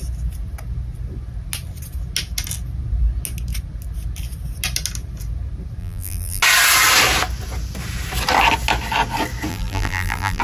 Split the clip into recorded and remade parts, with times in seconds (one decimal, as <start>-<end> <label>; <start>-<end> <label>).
0.0-5.8 recorded; 5.8-6.4 remade; 6.4-9.5 recorded; 9.5-10.4 remade